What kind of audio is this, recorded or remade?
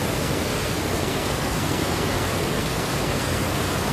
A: remade